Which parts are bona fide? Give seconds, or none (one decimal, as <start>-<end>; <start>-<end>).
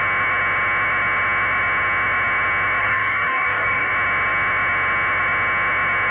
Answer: 0.0-2.8; 3.9-6.1